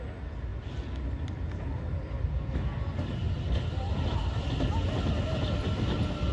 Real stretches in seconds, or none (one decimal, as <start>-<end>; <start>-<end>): 0.0-6.3